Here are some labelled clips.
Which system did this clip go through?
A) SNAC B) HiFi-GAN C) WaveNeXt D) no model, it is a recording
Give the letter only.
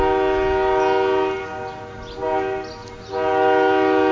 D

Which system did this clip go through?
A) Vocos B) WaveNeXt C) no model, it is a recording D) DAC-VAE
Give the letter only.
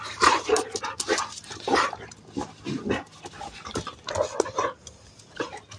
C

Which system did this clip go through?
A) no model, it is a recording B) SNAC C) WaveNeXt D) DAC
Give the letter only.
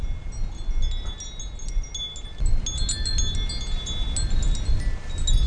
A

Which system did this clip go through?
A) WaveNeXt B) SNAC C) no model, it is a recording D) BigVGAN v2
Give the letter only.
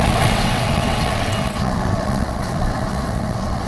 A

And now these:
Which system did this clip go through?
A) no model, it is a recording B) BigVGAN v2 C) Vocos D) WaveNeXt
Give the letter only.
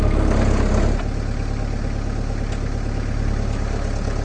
A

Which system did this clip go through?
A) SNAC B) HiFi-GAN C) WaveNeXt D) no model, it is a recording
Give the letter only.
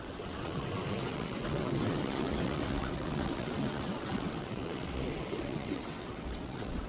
C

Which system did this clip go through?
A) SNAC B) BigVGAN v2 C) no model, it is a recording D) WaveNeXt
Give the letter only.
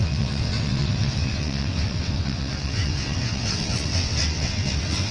D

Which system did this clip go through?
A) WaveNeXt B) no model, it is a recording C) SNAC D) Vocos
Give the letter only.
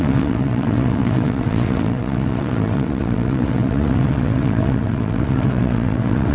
A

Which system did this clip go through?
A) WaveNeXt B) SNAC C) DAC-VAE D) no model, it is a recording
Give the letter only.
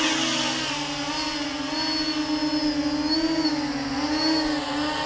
D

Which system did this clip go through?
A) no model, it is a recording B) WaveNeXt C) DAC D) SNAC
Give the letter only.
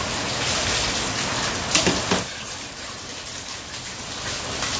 A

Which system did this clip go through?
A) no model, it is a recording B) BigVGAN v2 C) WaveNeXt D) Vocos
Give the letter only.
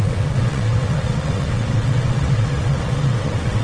C